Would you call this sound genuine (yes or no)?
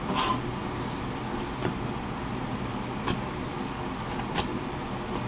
yes